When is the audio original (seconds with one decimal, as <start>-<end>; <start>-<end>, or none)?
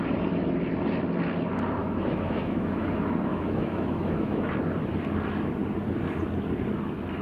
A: 0.0-1.8; 2.9-3.3; 4.5-7.2